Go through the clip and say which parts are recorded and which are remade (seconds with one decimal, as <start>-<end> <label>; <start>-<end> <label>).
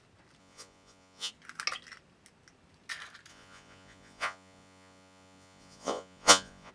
0.0-0.4 recorded; 0.4-1.3 remade; 1.3-3.3 recorded; 3.3-6.7 remade